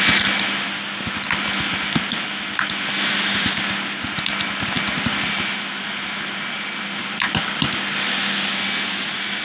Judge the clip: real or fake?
real